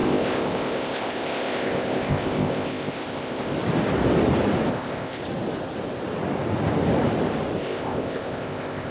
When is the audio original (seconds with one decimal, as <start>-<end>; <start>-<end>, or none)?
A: 3.5-4.7; 5.2-7.6